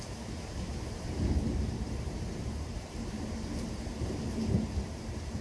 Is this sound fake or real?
fake